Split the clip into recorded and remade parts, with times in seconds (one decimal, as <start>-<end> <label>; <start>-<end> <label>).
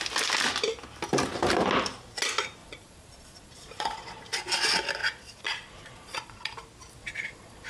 0.0-2.6 recorded; 2.6-4.2 remade; 4.2-5.0 recorded; 5.0-6.5 remade; 6.5-7.0 recorded; 7.0-7.7 remade